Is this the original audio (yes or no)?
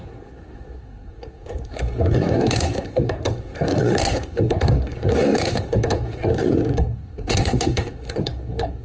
no